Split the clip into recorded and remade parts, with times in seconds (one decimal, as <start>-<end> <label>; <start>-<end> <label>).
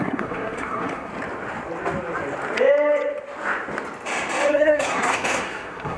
0.0-1.1 remade; 1.1-4.5 recorded; 4.5-6.0 remade